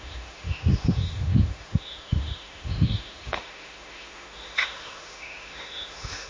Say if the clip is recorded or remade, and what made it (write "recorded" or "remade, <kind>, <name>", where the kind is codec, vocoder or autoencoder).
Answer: remade, autoencoder, DAC-VAE